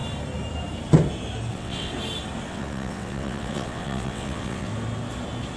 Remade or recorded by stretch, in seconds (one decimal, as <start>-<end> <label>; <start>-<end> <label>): 0.0-1.5 recorded; 1.5-1.9 remade; 1.9-2.5 recorded; 2.5-4.7 remade; 4.7-5.6 recorded